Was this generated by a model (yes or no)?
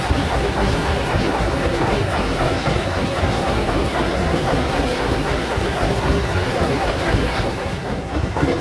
yes